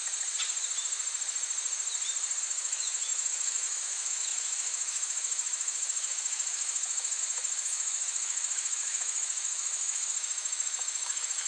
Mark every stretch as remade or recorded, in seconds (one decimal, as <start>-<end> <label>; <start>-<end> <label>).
0.0-2.4 recorded; 2.4-11.5 remade